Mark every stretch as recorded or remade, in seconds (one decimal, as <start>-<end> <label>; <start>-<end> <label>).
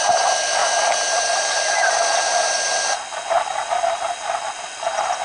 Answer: 0.0-5.2 recorded